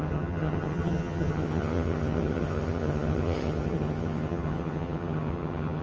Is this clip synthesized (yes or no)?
yes